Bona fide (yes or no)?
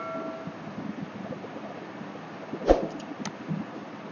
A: yes